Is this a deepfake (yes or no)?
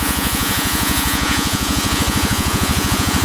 yes